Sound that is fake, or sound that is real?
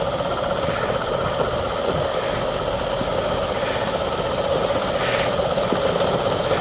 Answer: real